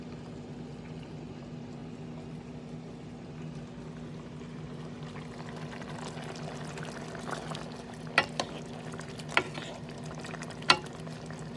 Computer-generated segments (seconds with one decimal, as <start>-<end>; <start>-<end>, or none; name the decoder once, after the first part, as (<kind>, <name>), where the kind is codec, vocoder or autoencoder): none